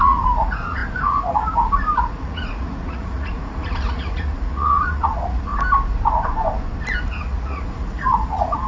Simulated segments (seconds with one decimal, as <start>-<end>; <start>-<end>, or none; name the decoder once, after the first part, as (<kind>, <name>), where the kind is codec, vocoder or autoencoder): 0.0-5.5 (vocoder, Vocos); 7.0-8.7